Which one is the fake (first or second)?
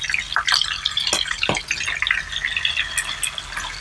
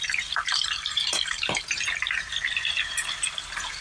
second